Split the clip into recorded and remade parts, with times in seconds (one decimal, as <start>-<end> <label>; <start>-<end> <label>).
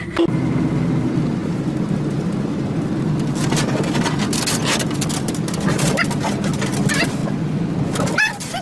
0.0-1.4 recorded; 1.4-3.1 remade; 3.1-8.6 recorded